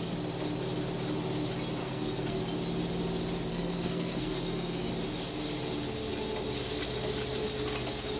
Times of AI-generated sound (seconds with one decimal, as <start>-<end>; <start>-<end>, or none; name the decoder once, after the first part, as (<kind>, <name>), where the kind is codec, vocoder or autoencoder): 1.8-2.4 (codec, SNAC); 3.5-4.9